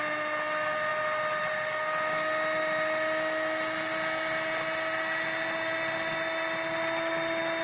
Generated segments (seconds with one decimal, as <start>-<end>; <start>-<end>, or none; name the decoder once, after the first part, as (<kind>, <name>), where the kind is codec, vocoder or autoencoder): none